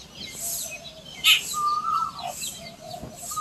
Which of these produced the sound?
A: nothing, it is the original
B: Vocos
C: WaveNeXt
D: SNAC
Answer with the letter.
A